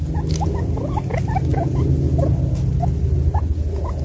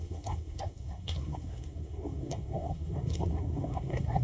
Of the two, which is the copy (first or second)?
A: second